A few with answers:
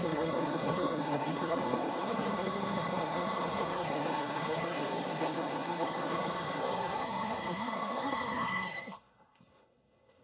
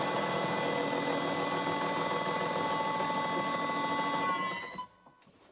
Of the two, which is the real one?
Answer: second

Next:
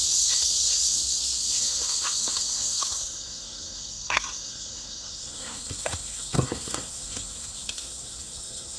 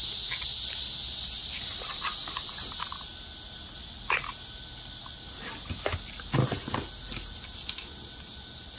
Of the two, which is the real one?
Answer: second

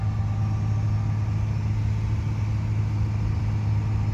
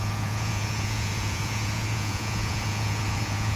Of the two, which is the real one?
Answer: first